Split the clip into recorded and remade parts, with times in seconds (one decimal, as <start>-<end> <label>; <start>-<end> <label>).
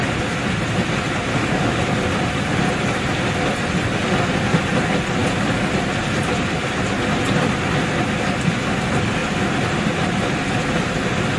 0.0-1.3 recorded; 1.3-1.8 remade; 1.8-11.4 recorded